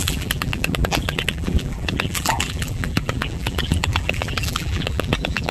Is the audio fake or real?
fake